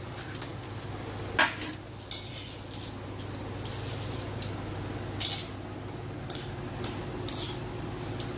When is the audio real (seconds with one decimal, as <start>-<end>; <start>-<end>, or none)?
0.0-8.4